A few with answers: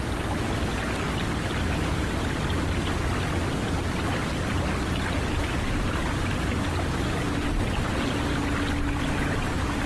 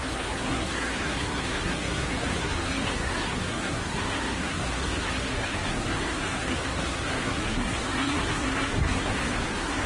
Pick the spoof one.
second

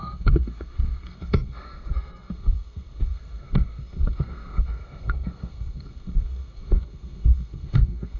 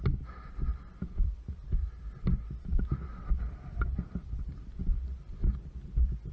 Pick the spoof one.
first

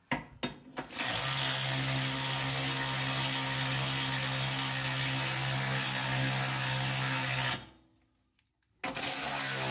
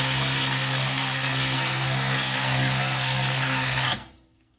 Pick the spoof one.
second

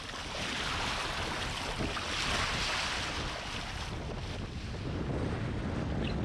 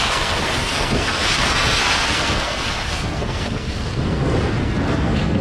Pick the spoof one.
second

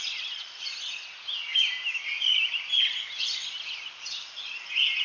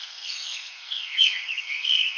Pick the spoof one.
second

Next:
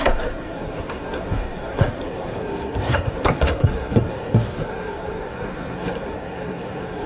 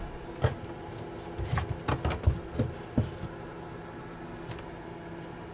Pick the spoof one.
first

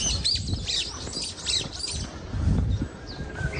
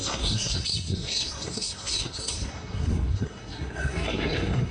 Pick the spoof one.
second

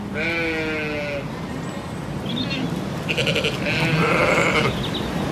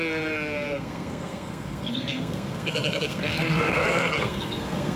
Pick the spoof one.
second